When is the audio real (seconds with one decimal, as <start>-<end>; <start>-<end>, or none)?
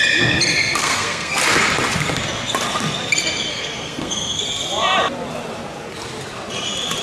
0.0-0.8; 1.4-3.5; 4.4-7.0